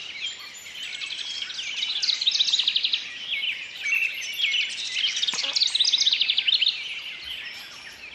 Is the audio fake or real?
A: real